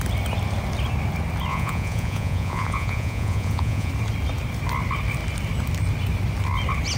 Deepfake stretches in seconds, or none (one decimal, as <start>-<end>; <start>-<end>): 1.5-3.9